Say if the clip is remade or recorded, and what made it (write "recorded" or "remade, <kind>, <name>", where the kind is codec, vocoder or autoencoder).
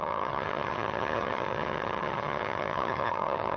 remade, vocoder, HiFi-GAN